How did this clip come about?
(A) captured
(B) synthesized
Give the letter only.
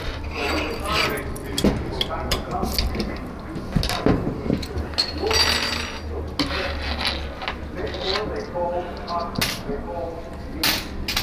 A